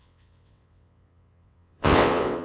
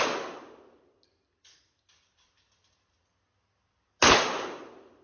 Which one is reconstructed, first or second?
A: first